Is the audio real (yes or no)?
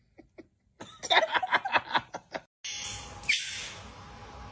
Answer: yes